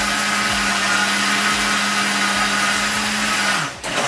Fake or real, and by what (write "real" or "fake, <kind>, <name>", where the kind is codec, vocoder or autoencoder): real